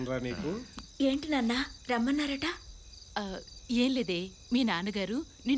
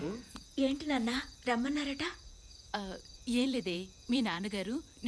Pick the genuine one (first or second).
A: first